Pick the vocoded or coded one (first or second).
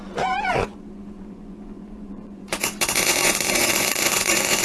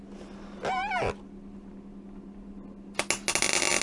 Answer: first